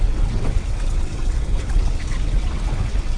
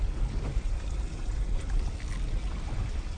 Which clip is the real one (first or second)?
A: second